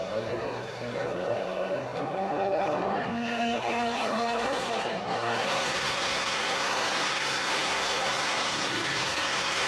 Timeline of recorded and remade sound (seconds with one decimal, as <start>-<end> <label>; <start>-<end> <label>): 0.0-9.7 remade